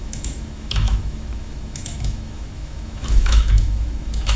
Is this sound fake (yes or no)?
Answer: yes